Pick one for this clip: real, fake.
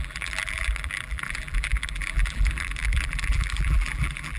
fake